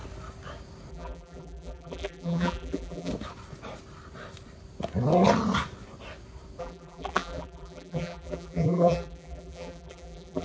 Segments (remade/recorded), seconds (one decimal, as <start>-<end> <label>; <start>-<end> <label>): 0.0-0.9 recorded; 0.9-3.1 remade; 3.1-6.6 recorded; 6.6-10.4 remade